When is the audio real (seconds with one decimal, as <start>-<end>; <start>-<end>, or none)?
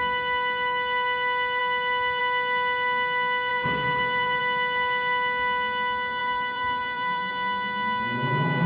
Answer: 0.0-3.5; 4.4-6.2; 7.3-8.7